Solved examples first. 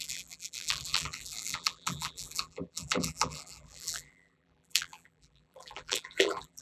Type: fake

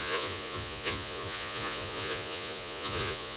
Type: fake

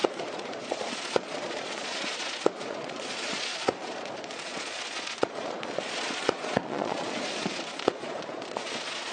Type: fake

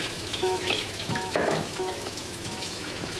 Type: fake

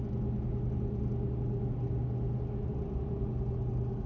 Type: real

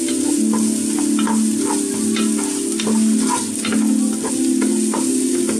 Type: real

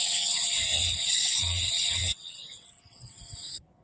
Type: fake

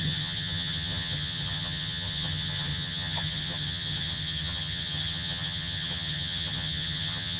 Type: fake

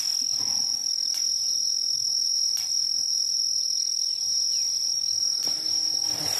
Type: real